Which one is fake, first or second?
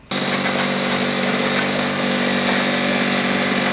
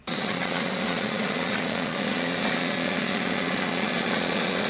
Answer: second